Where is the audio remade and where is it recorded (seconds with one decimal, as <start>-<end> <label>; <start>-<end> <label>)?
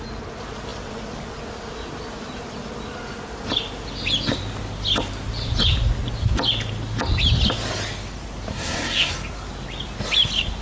0.0-8.5 recorded; 8.5-9.1 remade; 9.1-10.6 recorded